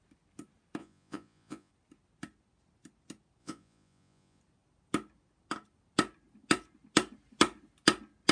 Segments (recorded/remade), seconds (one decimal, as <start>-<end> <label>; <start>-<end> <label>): 0.0-0.8 recorded; 0.8-1.7 remade; 1.7-3.4 recorded; 3.4-4.4 remade; 4.4-8.3 recorded